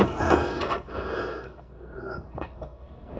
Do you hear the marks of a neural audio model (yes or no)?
yes